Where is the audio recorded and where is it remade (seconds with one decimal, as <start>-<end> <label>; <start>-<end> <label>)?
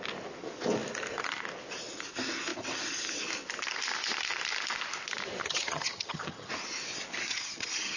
0.0-5.4 recorded; 5.4-6.5 remade; 6.5-7.3 recorded; 7.3-8.0 remade